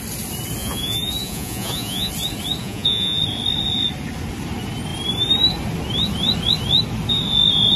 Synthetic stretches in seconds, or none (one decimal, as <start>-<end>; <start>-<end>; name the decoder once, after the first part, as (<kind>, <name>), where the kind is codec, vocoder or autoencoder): 0.6-2.1 (vocoder, Vocos); 2.6-3.2